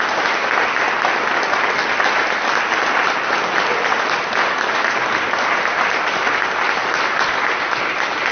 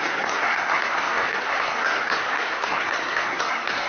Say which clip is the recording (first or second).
first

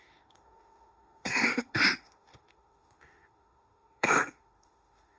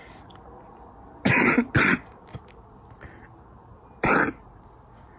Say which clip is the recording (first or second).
second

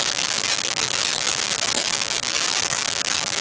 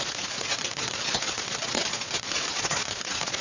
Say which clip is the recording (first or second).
first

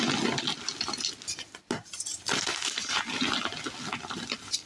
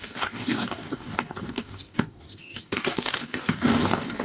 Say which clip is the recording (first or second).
first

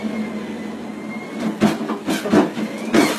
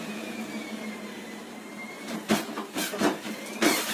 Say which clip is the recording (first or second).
first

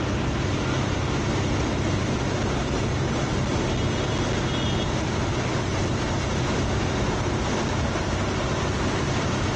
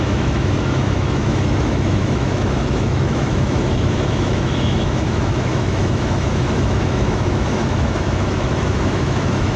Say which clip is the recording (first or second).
first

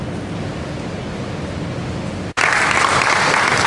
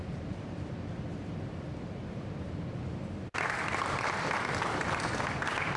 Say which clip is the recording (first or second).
first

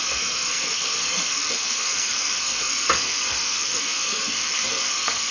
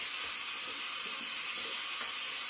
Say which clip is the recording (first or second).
second